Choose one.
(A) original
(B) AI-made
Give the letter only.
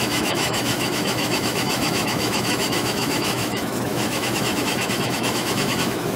B